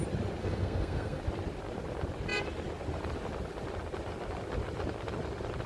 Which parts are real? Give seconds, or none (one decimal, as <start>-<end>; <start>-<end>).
0.0-0.4; 1.2-5.7